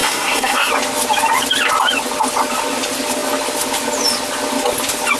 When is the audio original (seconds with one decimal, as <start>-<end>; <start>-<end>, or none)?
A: 0.7-5.2

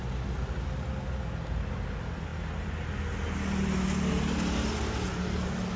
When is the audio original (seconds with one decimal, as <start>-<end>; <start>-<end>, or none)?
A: 0.0-5.8

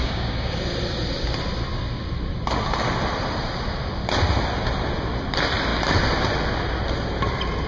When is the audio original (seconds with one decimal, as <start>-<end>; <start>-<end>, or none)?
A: 0.6-7.7